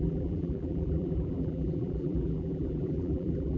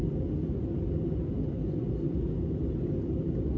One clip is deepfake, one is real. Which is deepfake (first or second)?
first